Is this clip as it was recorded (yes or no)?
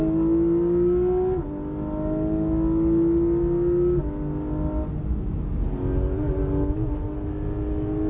yes